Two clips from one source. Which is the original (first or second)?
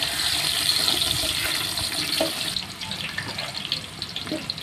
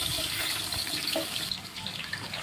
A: first